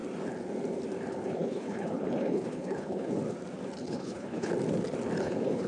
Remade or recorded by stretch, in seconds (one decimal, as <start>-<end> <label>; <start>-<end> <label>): 0.0-1.1 recorded; 1.1-3.2 remade; 3.2-3.8 recorded; 3.8-4.5 remade; 4.5-5.2 recorded; 5.2-5.7 remade